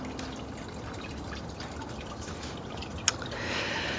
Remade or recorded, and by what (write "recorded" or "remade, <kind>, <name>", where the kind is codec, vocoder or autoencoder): recorded